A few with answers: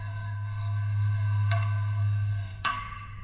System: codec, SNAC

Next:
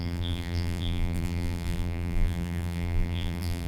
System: vocoder, BigVGAN v2